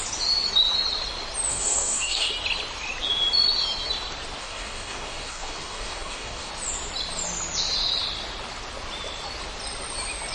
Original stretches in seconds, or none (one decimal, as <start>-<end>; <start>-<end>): 0.0-1.5; 2.3-4.4; 6.5-10.3